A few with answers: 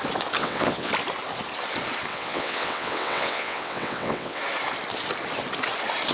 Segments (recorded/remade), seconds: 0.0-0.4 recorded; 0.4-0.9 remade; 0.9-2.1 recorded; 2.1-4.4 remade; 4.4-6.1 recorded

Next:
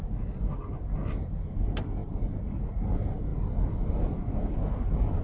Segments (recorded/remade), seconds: 0.0-5.2 recorded

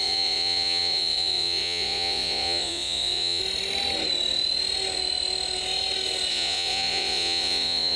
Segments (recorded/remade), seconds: 0.0-3.4 remade; 3.4-6.3 recorded; 6.3-8.0 remade

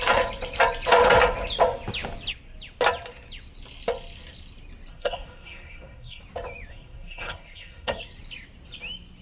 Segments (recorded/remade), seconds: 0.0-4.9 recorded; 4.9-6.2 remade; 6.2-6.7 recorded; 6.7-8.0 remade; 8.0-9.2 recorded

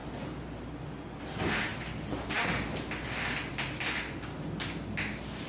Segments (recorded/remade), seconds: 0.0-5.5 recorded